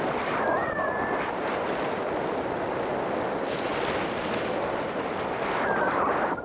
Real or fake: real